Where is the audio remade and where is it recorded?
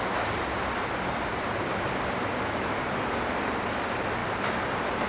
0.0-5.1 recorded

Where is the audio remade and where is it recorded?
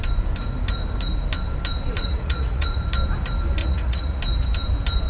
0.0-2.0 recorded; 2.0-2.8 remade; 2.8-3.6 recorded; 3.6-4.2 remade; 4.2-5.1 recorded